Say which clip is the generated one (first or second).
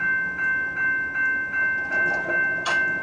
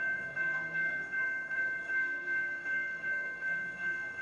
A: second